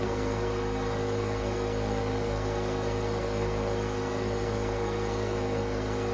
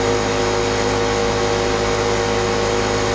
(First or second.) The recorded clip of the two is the second